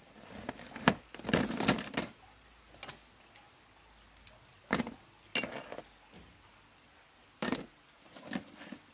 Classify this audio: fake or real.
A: real